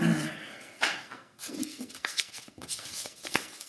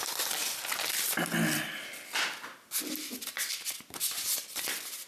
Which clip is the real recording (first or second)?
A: second